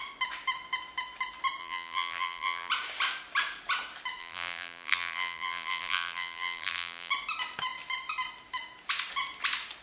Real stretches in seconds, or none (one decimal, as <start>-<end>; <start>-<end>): 0.0-1.6; 2.7-4.2; 7.1-9.8

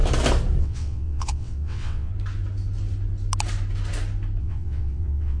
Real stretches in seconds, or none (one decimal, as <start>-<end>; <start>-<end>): 0.0-0.6; 2.1-4.4

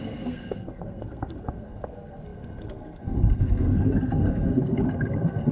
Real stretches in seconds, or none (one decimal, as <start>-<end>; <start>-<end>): none

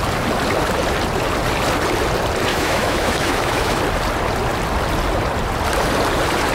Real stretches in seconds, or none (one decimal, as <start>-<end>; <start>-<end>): 0.0-2.5; 3.8-6.5